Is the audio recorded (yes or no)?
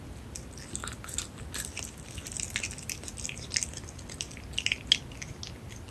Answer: yes